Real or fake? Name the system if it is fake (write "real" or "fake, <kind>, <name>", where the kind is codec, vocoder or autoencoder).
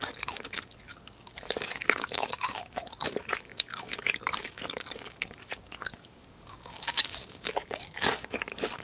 fake, codec, DAC